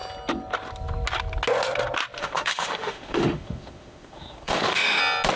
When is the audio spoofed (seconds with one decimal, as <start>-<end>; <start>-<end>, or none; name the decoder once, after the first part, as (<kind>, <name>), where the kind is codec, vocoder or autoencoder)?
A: 2.2-5.0 (autoencoder, DAC-VAE)

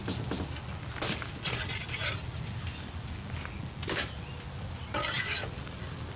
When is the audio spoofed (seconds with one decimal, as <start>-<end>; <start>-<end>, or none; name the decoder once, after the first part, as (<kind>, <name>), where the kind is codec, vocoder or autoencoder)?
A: none

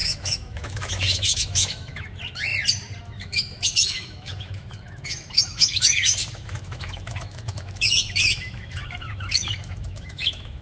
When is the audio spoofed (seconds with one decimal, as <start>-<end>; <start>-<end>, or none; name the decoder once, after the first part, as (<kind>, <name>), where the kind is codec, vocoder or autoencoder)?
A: 0.0-2.5 (autoencoder, DAC-VAE); 3.0-10.6

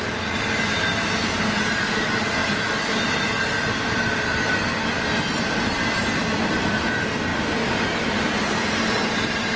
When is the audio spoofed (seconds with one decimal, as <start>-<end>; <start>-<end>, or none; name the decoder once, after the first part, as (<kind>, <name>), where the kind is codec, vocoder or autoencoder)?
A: none

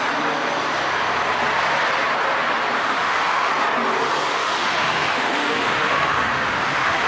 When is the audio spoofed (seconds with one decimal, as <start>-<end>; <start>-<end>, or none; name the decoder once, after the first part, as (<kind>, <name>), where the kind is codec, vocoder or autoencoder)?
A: 2.8-3.5 (autoencoder, DAC-VAE); 4.3-7.1